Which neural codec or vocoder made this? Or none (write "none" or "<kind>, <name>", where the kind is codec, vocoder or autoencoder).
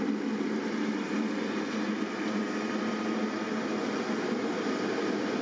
none